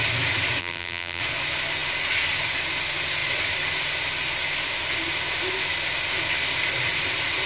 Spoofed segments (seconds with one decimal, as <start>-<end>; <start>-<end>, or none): 0.6-1.2